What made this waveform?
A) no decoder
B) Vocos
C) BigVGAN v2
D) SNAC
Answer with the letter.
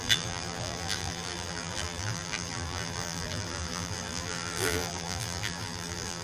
C